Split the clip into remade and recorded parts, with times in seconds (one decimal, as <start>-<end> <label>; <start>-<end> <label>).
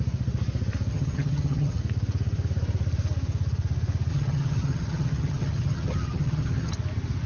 0.0-0.9 recorded; 0.9-1.8 remade; 1.8-4.1 recorded; 4.1-6.7 remade; 6.7-7.3 recorded